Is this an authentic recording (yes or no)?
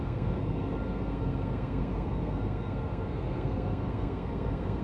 no